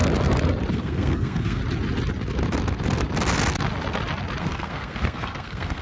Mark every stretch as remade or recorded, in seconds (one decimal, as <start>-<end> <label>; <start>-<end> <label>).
0.0-0.7 recorded; 0.7-1.6 remade; 1.6-4.4 recorded; 4.4-5.8 remade